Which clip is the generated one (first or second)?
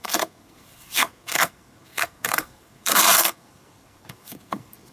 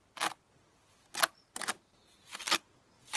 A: first